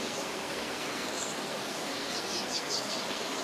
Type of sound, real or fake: fake